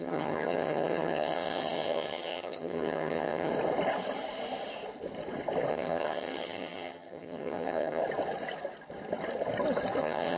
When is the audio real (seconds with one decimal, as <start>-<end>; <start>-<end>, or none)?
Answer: 3.5-5.7; 8.0-10.0